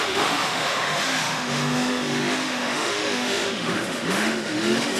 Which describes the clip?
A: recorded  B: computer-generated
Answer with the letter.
B